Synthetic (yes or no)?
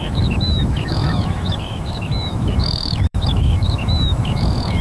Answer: yes